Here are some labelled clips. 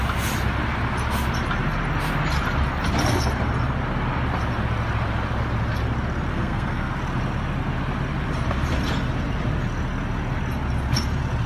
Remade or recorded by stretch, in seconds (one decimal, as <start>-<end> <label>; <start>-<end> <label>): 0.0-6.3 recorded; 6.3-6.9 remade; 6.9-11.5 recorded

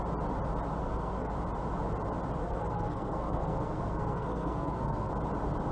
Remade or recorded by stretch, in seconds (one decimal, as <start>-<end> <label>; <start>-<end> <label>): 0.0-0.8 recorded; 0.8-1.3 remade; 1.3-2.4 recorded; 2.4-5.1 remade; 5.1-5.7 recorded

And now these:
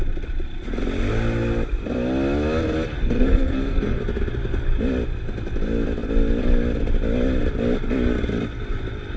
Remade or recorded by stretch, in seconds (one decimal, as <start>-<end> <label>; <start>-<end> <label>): 0.0-3.0 recorded; 3.0-4.0 remade; 4.0-9.2 recorded

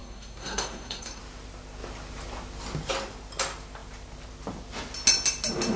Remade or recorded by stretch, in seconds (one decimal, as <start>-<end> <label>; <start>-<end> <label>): 0.0-1.2 remade; 1.2-5.8 recorded

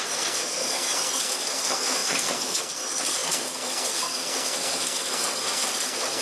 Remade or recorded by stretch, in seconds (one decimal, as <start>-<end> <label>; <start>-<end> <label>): 0.0-6.2 remade

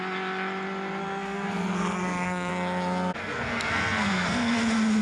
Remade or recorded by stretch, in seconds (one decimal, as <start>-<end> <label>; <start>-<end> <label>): 0.0-1.0 recorded; 1.0-2.5 remade; 2.5-3.2 recorded; 3.2-4.6 remade; 4.6-5.0 recorded

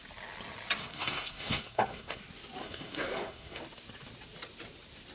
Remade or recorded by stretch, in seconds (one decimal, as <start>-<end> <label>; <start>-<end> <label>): 0.0-0.8 recorded; 0.8-2.2 remade; 2.2-2.6 recorded; 2.6-3.6 remade; 3.6-5.1 recorded